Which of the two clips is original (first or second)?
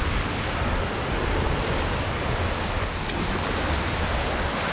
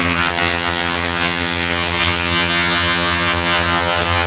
first